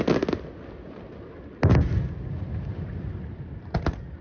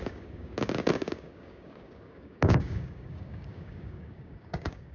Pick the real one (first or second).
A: first